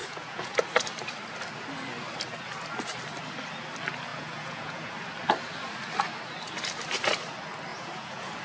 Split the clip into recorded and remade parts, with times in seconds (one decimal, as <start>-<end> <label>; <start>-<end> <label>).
0.0-0.6 remade; 0.6-4.1 recorded; 4.1-4.9 remade; 4.9-7.7 recorded; 7.7-8.4 remade